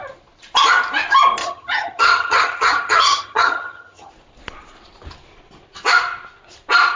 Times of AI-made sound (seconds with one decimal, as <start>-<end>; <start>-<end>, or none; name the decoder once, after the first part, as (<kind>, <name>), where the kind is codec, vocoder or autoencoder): 1.4-4.1 (vocoder, HiFi-GAN)